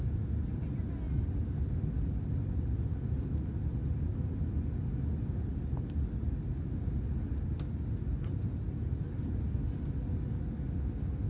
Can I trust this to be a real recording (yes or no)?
yes